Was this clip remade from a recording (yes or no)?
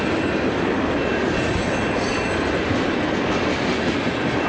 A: no